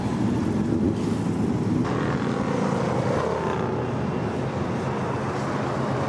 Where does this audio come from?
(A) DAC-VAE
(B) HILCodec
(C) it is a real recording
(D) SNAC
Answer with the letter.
C